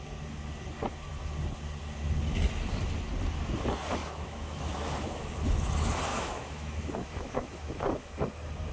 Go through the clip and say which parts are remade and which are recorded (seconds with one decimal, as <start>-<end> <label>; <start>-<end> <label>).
0.0-4.0 recorded; 4.0-5.4 remade; 5.4-6.1 recorded; 6.1-8.1 remade; 8.1-8.7 recorded